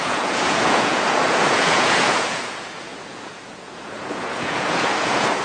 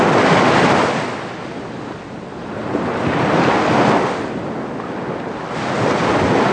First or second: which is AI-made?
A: first